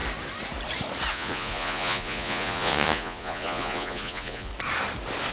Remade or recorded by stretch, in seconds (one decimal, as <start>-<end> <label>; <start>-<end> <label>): 0.0-1.1 recorded; 1.1-4.5 remade; 4.5-5.3 recorded